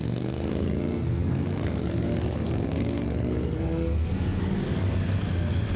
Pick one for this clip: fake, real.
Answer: fake